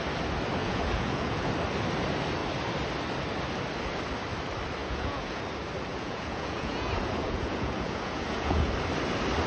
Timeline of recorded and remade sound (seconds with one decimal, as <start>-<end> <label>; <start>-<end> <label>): 0.0-0.6 recorded; 0.6-1.5 remade; 1.5-4.8 recorded; 4.8-5.4 remade; 5.4-5.9 recorded; 5.9-8.7 remade; 8.7-9.5 recorded